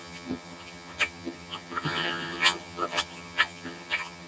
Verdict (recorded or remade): remade